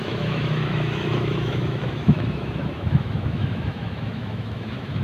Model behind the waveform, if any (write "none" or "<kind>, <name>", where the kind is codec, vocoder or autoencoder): autoencoder, DAC-VAE